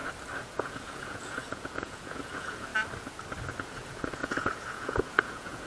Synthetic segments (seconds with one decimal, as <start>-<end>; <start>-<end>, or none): 0.5-2.7; 3.6-5.7